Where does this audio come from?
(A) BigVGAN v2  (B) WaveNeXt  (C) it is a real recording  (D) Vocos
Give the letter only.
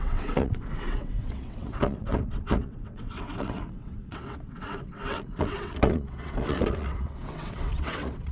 B